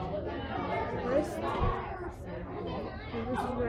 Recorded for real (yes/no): yes